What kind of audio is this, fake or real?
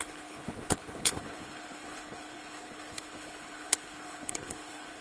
fake